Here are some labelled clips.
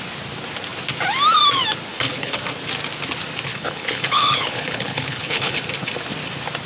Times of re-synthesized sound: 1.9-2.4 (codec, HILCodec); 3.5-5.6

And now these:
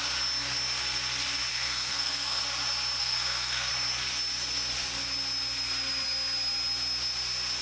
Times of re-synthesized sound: 1.5-2.4 (codec, SNAC); 3.0-3.7

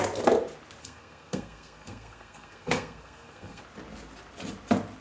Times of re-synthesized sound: 0.8-3.6 (codec, SNAC)

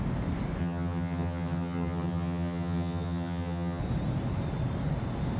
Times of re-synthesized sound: 0.6-3.8 (vocoder, HiFi-GAN)